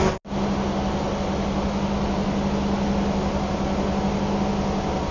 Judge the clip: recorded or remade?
recorded